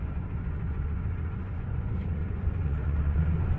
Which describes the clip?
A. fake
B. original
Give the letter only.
A